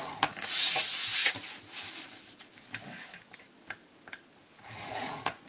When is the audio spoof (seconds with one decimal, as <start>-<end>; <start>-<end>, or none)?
0.0-1.2; 4.5-5.5